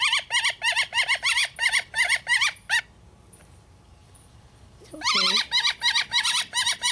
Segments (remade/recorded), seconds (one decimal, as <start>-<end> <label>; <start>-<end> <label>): 0.0-1.4 recorded; 1.4-2.8 remade; 2.8-4.0 recorded; 4.0-5.5 remade; 5.5-6.9 recorded